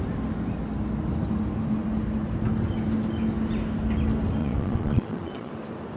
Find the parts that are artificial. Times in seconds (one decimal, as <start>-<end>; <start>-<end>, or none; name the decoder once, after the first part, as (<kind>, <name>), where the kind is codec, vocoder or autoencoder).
4.4-5.5 (vocoder, Vocos)